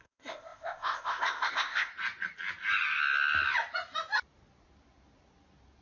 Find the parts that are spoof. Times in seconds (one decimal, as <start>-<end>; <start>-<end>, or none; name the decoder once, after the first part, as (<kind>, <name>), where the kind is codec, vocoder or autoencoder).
0.0-1.9 (codec, ZipCodec)